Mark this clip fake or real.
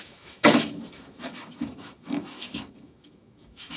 fake